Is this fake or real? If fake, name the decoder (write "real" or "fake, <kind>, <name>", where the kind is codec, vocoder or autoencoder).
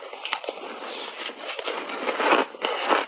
real